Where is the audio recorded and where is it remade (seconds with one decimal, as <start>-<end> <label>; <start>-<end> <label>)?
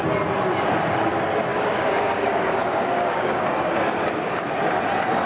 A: 0.0-1.5 recorded; 1.5-3.7 remade; 3.7-5.3 recorded